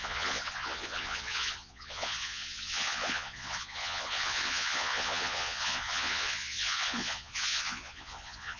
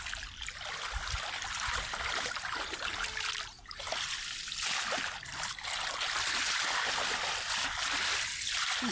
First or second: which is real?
second